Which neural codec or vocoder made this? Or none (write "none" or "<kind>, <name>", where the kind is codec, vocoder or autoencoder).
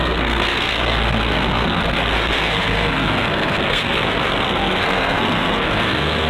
codec, SNAC